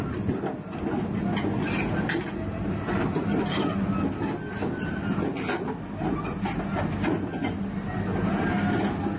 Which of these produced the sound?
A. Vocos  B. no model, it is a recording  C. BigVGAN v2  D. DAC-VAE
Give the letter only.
B